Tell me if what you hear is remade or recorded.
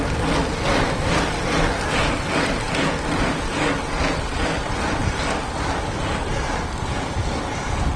recorded